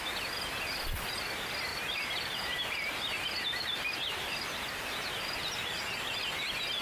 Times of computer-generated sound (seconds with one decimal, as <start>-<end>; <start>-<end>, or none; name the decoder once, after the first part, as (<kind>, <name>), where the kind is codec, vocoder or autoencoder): 1.7-5.8 (vocoder, BigVGAN v2)